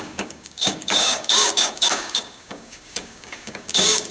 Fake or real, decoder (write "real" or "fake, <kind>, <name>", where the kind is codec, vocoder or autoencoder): fake, codec, DAC